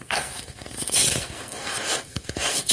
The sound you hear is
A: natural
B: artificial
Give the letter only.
B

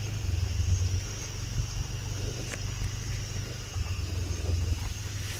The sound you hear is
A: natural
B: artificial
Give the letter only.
A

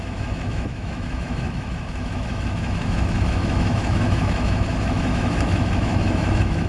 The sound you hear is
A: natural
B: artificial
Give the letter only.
B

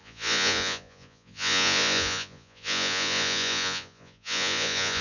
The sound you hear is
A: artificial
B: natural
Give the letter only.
A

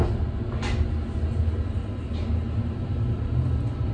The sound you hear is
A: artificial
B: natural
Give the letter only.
B